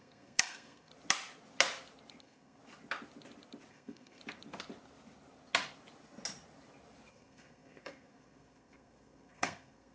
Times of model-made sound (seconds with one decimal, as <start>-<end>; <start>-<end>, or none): 0.0-0.9; 2.2-2.6; 3.7-4.2; 7.1-9.9

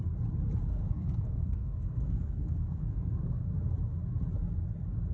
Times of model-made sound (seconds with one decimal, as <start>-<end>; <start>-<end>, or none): 0.7-3.5

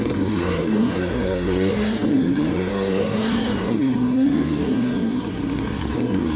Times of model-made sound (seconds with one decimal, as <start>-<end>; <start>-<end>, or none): 0.0-6.4

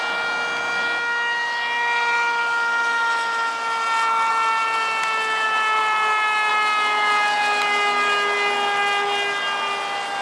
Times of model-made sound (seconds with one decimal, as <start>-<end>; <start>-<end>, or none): none

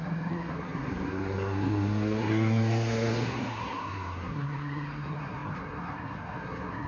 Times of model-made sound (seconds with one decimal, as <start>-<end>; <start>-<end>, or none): 0.0-6.9